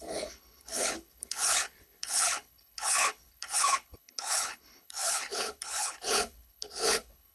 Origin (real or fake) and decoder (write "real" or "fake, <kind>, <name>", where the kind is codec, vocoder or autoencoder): fake, codec, HILCodec